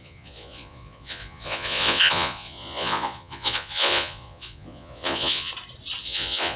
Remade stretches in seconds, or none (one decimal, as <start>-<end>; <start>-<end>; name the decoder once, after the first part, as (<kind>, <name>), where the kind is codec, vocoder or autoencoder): 0.0-5.5 (vocoder, Vocos); 6.0-6.6